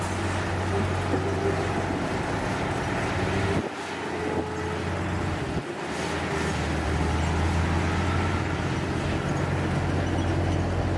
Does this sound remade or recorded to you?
recorded